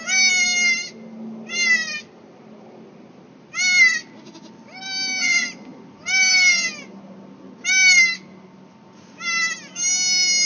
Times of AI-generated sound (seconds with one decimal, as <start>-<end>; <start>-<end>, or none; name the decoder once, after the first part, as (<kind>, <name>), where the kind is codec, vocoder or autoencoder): none